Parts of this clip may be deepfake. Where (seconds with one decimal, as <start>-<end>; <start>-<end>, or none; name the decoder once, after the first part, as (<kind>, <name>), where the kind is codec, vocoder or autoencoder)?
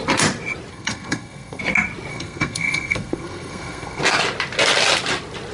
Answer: 0.7-1.6 (codec, SNAC); 2.1-4.0